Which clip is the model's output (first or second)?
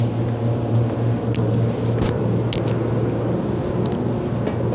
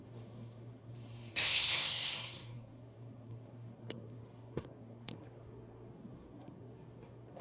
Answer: second